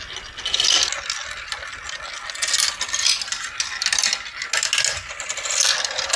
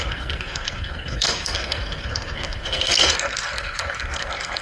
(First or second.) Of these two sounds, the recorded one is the first